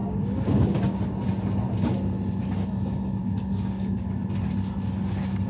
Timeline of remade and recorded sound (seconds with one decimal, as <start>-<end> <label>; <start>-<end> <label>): 0.0-1.0 remade; 1.0-3.2 recorded; 3.2-4.2 remade; 4.2-5.5 recorded